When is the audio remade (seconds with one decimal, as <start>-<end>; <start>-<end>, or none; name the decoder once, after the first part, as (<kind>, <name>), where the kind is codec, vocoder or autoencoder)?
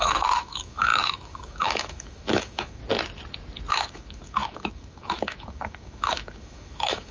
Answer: 0.0-2.8 (autoencoder, DAC-VAE); 3.7-7.1